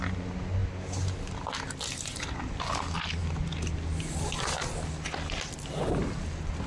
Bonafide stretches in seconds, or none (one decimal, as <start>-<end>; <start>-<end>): 0.0-6.7